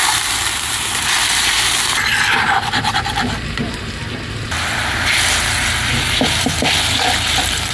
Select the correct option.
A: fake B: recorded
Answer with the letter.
A